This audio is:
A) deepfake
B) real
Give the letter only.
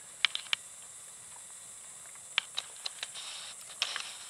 B